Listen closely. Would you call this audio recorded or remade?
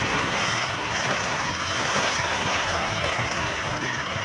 remade